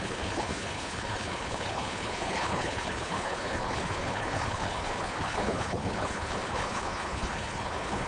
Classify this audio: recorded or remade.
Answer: remade